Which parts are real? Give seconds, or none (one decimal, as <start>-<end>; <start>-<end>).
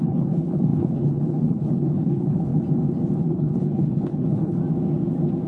2.5-3.2; 4.6-5.5